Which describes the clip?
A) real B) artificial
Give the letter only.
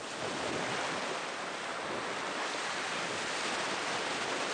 A